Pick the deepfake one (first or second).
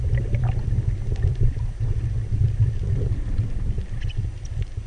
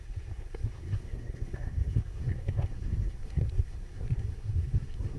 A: second